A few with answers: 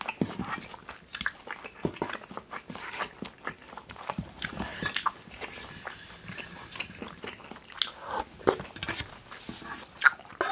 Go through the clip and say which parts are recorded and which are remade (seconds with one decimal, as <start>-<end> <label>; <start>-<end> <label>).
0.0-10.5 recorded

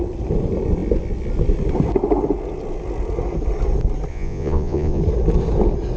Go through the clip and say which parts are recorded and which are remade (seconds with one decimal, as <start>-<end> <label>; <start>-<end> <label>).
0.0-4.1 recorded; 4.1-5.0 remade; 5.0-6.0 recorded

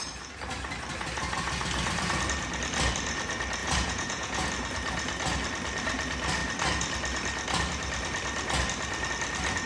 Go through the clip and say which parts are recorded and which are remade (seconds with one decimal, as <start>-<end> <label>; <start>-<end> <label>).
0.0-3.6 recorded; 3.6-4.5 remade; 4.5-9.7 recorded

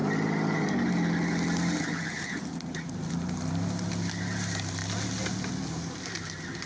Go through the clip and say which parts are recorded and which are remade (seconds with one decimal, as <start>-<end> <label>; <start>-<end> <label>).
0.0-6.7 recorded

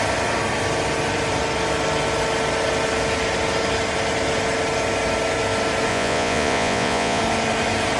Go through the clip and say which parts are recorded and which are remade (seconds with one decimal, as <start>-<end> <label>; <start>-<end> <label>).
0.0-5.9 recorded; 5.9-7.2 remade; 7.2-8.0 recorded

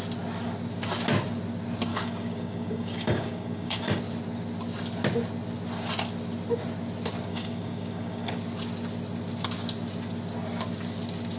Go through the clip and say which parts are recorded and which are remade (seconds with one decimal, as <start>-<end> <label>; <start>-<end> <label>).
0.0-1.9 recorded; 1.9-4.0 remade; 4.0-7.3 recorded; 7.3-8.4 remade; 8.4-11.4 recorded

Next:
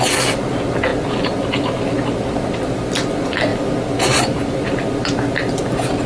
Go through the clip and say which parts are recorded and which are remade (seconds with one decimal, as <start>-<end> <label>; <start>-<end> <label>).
0.0-6.1 recorded

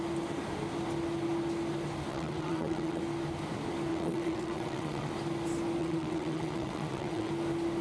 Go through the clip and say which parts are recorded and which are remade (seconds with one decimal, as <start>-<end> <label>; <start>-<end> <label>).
0.0-2.1 recorded; 2.1-3.0 remade; 3.0-3.9 recorded; 3.9-5.1 remade; 5.1-5.8 recorded; 5.8-7.3 remade; 7.3-7.8 recorded